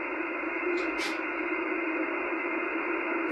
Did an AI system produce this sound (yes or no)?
no